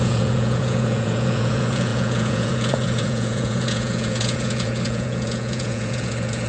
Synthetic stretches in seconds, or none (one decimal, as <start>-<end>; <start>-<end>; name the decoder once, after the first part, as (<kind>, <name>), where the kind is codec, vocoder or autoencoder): 0.0-6.5 (vocoder, Vocos)